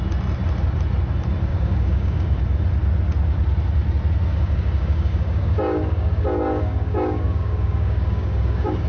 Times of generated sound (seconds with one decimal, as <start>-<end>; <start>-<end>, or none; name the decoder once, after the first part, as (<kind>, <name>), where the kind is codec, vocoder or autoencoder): 1.5-2.4 (codec, DAC); 4.3-8.9

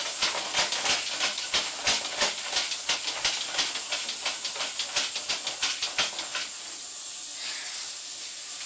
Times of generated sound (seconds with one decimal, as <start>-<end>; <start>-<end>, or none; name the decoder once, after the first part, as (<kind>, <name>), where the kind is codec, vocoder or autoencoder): none

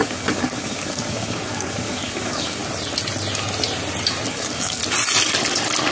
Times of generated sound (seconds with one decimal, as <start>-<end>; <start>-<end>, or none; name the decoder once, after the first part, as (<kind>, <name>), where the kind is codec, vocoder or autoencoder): 0.0-2.6 (codec, DAC); 4.3-4.8

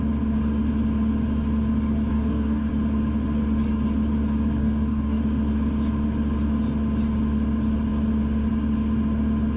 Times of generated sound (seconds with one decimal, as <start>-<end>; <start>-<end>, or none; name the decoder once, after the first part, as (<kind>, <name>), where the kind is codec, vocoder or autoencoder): 2.1-2.7 (codec, DAC); 4.6-5.2

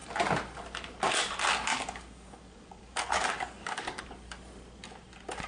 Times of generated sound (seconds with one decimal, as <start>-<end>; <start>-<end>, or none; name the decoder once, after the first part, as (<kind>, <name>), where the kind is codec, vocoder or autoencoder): 1.7-4.0 (codec, DAC)

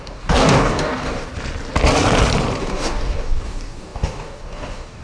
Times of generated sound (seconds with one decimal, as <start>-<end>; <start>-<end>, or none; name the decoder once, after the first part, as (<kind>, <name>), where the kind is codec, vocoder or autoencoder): 0.0-1.3 (codec, DAC); 2.6-5.0

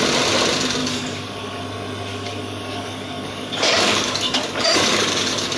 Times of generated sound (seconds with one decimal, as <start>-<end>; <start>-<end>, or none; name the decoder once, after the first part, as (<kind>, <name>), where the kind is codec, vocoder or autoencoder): 0.8-1.6 (codec, DAC); 2.1-5.6